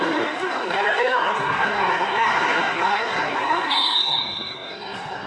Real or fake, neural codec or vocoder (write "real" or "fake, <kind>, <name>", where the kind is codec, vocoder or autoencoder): fake, codec, SNAC